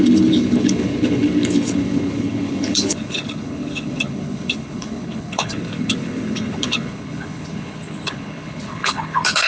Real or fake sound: fake